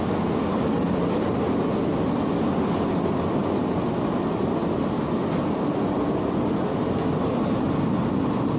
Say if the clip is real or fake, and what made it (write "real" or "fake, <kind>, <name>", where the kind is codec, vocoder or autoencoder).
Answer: real